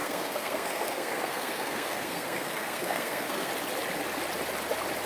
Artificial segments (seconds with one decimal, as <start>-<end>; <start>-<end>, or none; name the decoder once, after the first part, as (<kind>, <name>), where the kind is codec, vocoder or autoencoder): 0.0-3.5 (codec, SNAC)